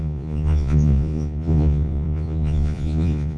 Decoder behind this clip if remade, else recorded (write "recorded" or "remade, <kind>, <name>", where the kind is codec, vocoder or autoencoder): remade, vocoder, Vocos